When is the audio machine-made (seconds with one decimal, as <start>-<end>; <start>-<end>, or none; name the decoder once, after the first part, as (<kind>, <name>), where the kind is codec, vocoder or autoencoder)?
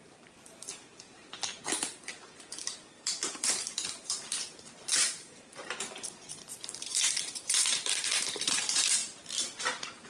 0.0-9.0 (vocoder, BigVGAN v2); 9.6-10.1